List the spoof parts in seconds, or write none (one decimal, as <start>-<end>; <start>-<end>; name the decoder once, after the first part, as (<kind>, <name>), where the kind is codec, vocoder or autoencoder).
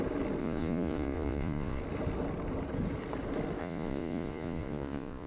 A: 0.4-1.8 (vocoder, Vocos); 3.6-5.3